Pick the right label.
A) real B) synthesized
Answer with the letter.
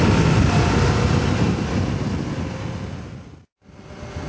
A